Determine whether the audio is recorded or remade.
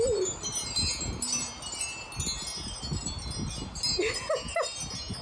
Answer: recorded